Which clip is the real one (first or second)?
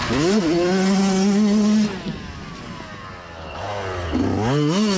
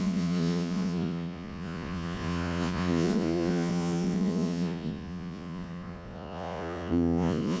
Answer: first